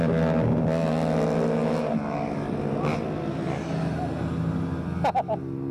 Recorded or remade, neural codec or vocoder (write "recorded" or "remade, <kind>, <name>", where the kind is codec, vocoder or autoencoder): recorded